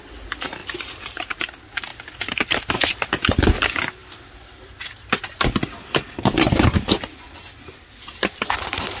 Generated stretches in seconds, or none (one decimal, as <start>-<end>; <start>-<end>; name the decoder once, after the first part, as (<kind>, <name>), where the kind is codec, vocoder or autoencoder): 0.6-1.4 (vocoder, BigVGAN v2); 1.9-2.7

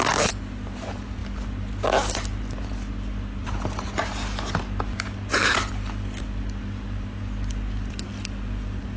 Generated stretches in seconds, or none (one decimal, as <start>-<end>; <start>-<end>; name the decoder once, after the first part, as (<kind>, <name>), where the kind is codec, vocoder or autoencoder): none

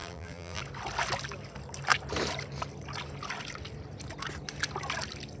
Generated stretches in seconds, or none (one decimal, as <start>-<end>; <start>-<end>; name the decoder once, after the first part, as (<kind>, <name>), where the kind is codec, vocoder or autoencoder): 0.0-0.6 (vocoder, BigVGAN v2)

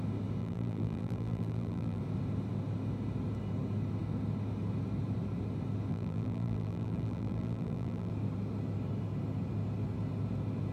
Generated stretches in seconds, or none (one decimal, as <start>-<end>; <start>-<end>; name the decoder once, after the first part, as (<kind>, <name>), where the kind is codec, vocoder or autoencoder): 0.4-2.0 (vocoder, BigVGAN v2); 5.9-8.1

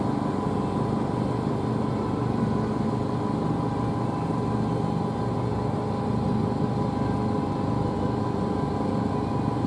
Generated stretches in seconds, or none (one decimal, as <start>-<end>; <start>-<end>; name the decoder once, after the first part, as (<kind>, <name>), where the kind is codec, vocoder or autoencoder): none

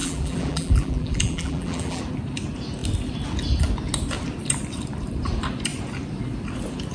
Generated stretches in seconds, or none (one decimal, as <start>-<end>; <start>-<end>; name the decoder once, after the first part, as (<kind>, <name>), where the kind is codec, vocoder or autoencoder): 0.0-2.0 (vocoder, BigVGAN v2)

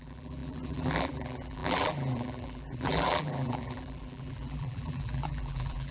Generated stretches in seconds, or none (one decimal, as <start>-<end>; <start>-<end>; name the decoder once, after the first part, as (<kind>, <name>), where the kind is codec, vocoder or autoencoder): 0.0-5.9 (vocoder, BigVGAN v2)

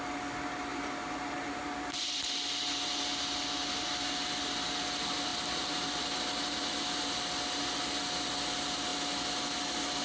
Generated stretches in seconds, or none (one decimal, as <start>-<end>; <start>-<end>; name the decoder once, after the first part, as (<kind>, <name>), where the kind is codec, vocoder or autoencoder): 0.7-2.2 (vocoder, BigVGAN v2); 5.3-6.2